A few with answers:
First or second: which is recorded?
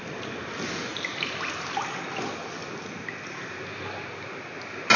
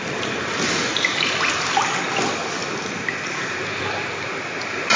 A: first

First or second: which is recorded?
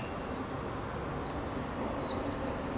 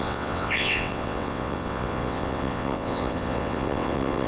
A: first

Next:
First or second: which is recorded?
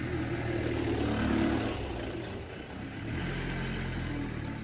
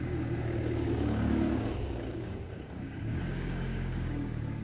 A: first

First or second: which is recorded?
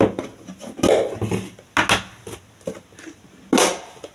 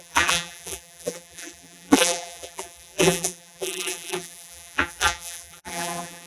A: first